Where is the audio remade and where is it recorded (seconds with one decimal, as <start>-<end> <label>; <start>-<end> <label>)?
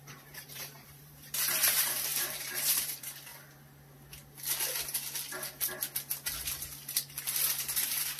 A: 0.0-3.3 remade; 3.3-7.6 recorded; 7.6-8.2 remade